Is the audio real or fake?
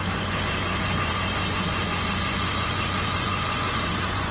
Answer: fake